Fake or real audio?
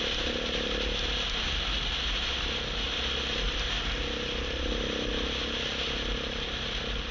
real